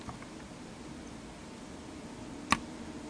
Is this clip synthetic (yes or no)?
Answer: no